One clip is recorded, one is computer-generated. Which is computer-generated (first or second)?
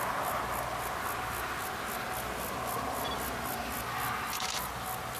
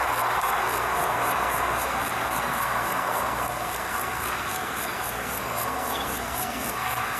second